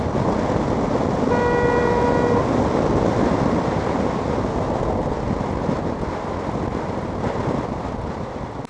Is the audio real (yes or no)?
yes